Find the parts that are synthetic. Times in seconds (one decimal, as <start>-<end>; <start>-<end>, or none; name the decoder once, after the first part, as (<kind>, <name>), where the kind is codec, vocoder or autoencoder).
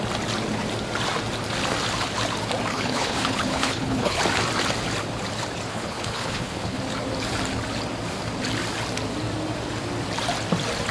2.7-4.2 (codec, HILCodec); 5.7-6.8